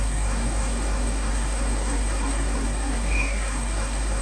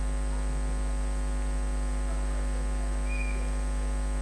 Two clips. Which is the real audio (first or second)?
second